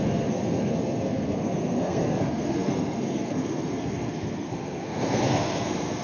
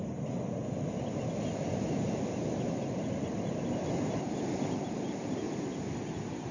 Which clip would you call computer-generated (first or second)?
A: first